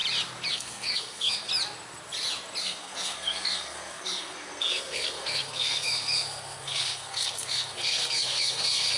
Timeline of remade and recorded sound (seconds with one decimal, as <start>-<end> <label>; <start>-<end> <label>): 0.0-0.5 recorded; 0.5-1.5 remade; 1.5-2.6 recorded; 2.6-9.0 remade